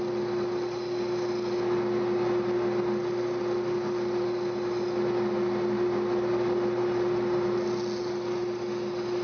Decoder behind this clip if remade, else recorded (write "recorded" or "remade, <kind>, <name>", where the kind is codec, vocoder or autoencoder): recorded